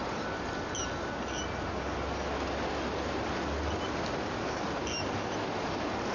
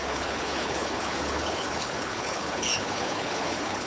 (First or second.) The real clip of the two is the first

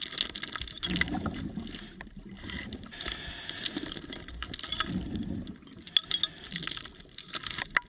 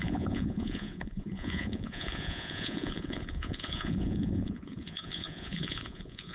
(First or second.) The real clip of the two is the first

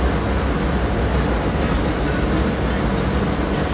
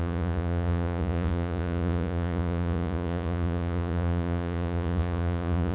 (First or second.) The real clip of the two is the first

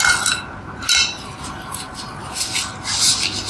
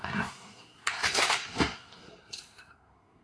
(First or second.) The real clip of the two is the first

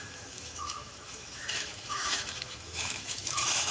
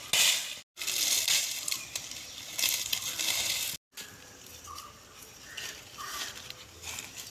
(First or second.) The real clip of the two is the second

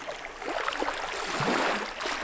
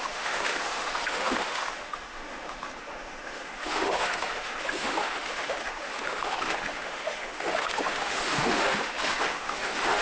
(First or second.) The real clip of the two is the first